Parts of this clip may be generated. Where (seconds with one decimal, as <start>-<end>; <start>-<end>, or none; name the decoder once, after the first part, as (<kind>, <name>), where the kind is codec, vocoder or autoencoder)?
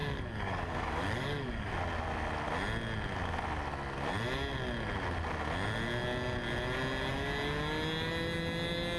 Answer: 0.0-1.7 (codec, DAC)